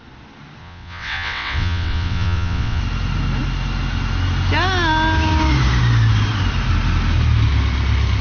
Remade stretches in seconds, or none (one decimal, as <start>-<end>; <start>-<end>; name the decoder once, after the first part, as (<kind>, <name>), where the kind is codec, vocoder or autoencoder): 0.6-2.8 (vocoder, WaveNeXt)